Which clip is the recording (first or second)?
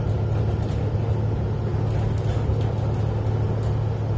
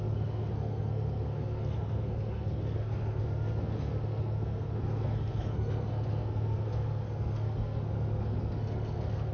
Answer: first